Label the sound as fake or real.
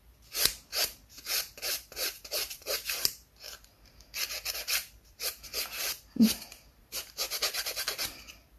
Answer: fake